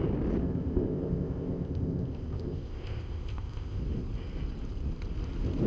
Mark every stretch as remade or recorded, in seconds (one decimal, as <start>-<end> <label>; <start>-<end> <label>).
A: 0.0-0.4 recorded; 0.4-3.8 remade; 3.8-5.7 recorded